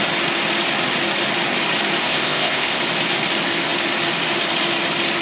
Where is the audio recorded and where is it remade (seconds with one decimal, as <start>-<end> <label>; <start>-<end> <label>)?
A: 0.0-2.0 recorded; 2.0-2.8 remade; 2.8-5.2 recorded